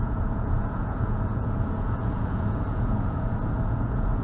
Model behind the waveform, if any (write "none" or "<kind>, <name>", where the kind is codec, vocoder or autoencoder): vocoder, Vocos